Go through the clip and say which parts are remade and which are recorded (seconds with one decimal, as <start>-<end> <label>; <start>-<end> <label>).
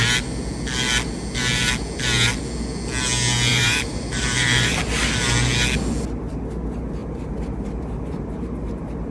0.0-3.5 recorded; 3.5-4.8 remade; 4.8-7.0 recorded; 7.0-8.7 remade; 8.7-9.1 recorded